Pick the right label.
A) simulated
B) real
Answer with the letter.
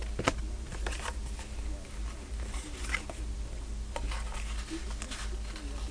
B